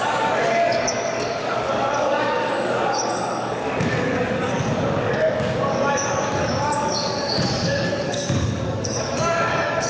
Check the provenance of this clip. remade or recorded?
remade